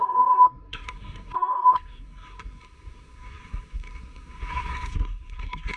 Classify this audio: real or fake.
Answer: fake